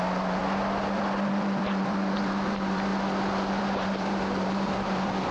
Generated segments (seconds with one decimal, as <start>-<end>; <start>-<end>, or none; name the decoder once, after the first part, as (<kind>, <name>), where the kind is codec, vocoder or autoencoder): 0.0-0.4 (vocoder, BigVGAN v2); 1.3-2.9; 3.6-5.3